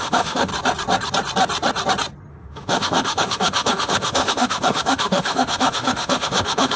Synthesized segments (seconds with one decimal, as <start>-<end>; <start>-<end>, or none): 0.0-0.5; 2.3-6.8